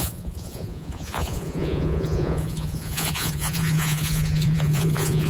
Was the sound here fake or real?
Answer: fake